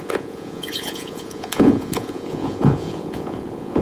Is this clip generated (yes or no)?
yes